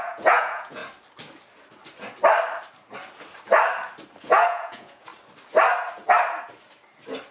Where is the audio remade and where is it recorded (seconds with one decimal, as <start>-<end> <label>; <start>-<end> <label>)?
0.0-0.8 remade; 0.8-4.2 recorded; 4.2-5.1 remade; 5.1-7.3 recorded